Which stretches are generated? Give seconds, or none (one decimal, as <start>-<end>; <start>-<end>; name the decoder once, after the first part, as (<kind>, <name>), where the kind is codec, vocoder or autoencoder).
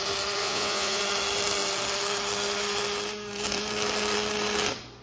0.4-1.0 (vocoder, Vocos)